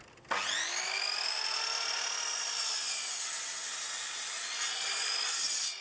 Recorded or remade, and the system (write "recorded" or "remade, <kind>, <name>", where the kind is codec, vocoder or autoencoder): recorded